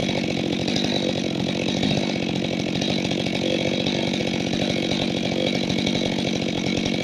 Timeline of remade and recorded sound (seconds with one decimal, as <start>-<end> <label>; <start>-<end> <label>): 0.0-4.2 remade; 4.2-7.0 recorded